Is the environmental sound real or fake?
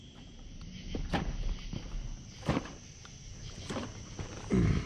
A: real